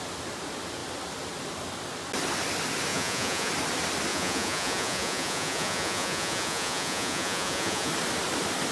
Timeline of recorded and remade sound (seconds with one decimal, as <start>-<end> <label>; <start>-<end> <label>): 0.0-2.9 recorded; 2.9-3.5 remade; 3.5-4.1 recorded; 4.1-7.9 remade; 7.9-8.7 recorded